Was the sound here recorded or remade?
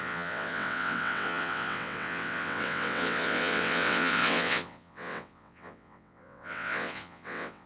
remade